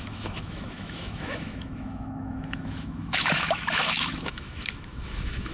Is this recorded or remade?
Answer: remade